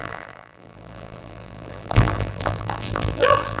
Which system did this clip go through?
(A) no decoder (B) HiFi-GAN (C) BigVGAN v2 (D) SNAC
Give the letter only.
C